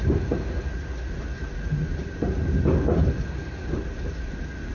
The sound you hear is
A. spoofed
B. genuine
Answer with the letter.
B